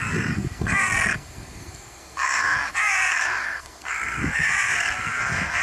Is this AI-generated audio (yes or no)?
yes